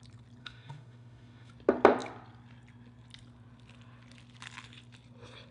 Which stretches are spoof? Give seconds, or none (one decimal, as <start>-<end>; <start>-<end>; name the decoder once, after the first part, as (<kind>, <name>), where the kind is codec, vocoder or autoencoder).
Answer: 0.4-1.5 (autoencoder, DAC-VAE)